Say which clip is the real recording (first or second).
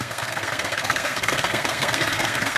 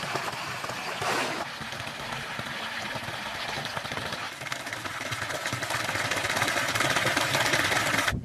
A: second